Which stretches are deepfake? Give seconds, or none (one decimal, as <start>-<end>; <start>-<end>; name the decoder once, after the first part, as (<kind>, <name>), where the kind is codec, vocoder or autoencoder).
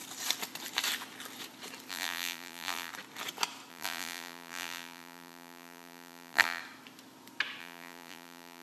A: 1.9-2.9 (vocoder, BigVGAN v2); 3.7-6.6; 7.6-8.6